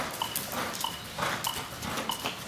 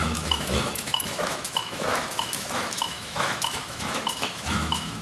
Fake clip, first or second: second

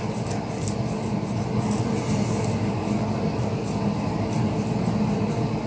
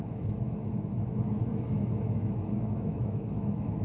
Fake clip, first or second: second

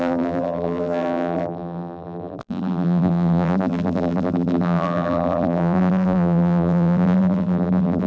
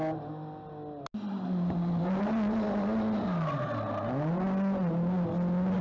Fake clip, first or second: first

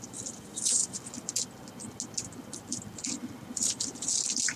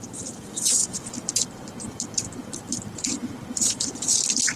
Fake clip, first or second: second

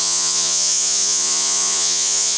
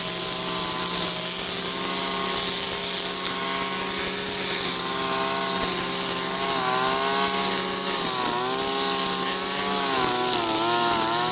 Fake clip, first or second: first